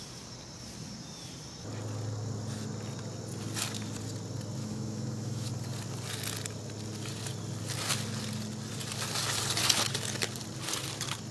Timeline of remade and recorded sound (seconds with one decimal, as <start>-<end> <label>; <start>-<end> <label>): 0.0-4.6 recorded; 4.6-5.5 remade; 5.5-11.3 recorded

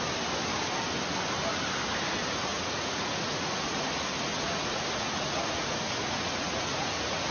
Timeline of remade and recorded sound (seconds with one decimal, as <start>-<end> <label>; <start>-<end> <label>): 0.0-2.5 recorded; 2.5-3.9 remade; 3.9-4.3 recorded; 4.3-7.3 remade

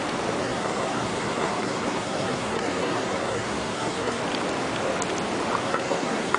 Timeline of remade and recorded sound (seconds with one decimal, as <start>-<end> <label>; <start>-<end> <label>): 0.0-0.4 recorded; 0.4-4.2 remade; 4.2-5.6 recorded; 5.6-6.4 remade

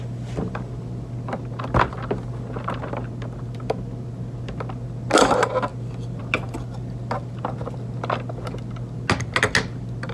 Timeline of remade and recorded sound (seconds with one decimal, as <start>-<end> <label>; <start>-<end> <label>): 0.0-10.1 recorded

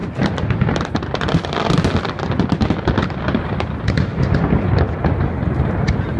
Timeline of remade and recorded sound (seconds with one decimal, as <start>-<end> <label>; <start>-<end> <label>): 0.0-6.2 recorded

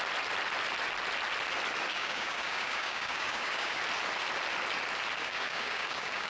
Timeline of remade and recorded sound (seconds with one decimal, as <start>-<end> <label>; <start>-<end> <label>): 0.0-1.9 recorded; 1.9-3.8 remade; 3.8-5.2 recorded; 5.2-6.3 remade